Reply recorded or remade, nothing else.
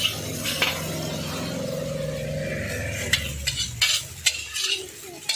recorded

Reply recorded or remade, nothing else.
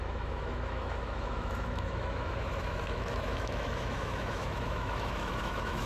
remade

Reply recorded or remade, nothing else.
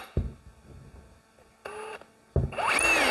recorded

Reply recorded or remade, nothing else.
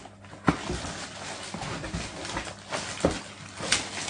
recorded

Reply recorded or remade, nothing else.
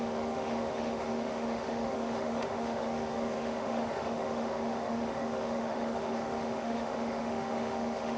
remade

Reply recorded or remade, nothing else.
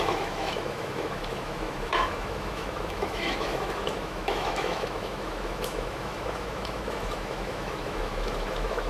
remade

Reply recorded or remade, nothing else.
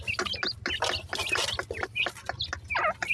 recorded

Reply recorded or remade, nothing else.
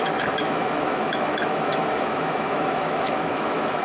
remade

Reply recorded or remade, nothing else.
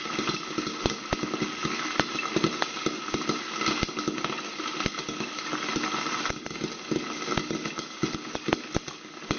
recorded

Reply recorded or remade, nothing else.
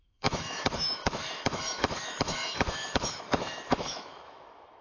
remade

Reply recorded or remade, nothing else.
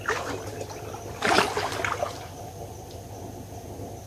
recorded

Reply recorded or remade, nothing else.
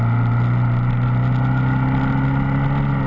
recorded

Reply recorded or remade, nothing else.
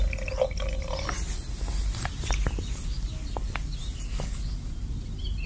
recorded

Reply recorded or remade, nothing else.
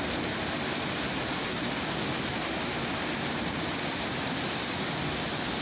recorded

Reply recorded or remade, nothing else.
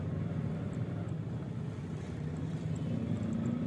recorded